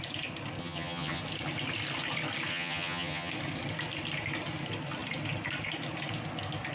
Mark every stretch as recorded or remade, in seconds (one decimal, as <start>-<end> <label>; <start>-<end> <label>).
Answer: 0.0-0.6 recorded; 0.6-1.2 remade; 1.2-2.5 recorded; 2.5-3.3 remade; 3.3-6.7 recorded